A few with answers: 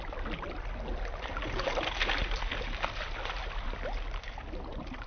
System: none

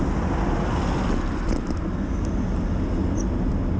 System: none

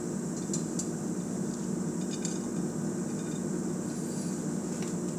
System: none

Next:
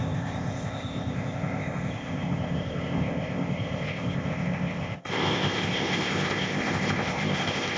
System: codec, ZipCodec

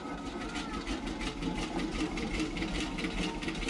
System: none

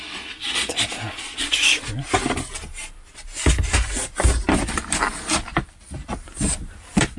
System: none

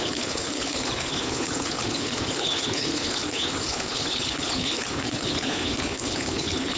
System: codec, HILCodec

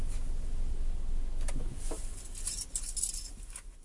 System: none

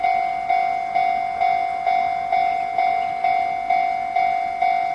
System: none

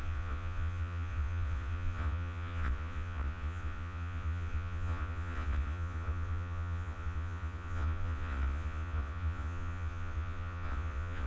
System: vocoder, Vocos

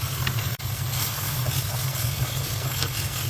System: codec, SNAC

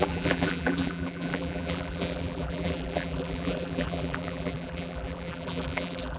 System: vocoder, BigVGAN v2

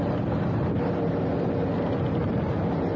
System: none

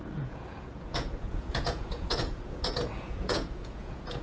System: vocoder, Vocos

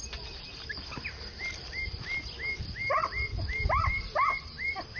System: none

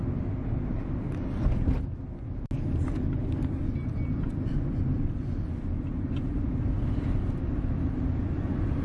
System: none